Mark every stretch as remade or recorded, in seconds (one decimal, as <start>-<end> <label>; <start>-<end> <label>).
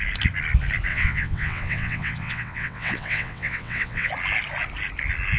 0.0-0.9 recorded; 0.9-4.1 remade; 4.1-5.4 recorded